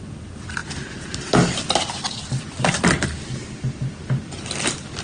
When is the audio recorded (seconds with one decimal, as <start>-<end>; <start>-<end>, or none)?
0.0-5.0